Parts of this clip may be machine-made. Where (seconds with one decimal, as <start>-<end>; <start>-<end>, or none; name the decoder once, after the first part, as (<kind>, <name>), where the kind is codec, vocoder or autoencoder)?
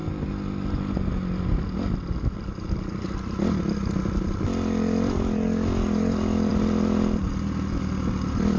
none